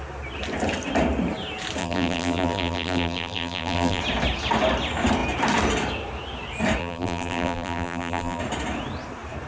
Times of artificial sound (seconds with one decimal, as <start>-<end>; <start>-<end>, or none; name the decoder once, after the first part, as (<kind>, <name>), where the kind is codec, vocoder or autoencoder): 1.8-4.0 (vocoder, BigVGAN v2); 6.8-8.4